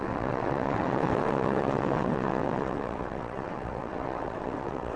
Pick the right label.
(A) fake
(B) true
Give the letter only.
A